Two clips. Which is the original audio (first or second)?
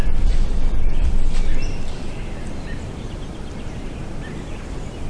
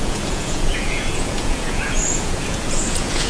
first